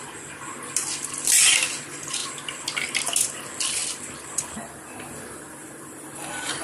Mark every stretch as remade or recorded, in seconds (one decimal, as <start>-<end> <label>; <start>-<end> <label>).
0.0-3.8 recorded; 3.8-6.6 remade